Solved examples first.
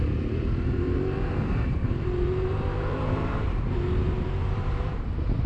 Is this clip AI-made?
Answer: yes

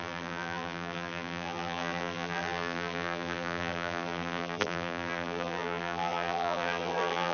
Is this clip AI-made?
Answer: yes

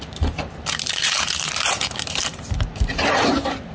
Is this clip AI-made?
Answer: yes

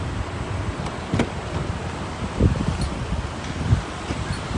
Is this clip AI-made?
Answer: no